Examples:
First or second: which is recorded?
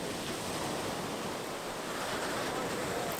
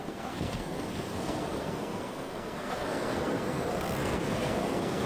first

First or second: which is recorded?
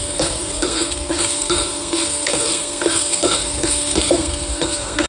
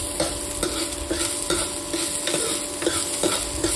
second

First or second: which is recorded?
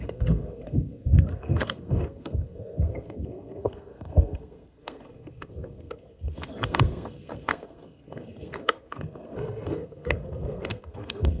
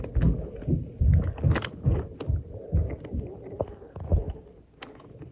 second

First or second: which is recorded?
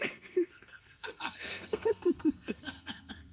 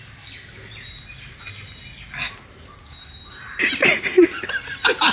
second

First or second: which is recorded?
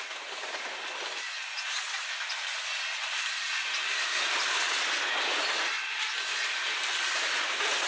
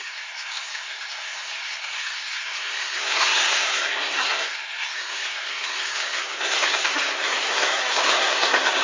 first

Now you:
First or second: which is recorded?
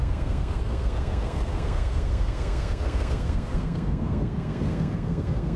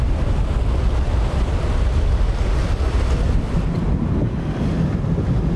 second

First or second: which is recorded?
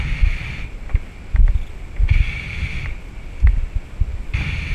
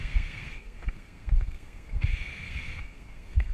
first